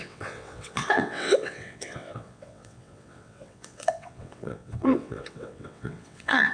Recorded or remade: remade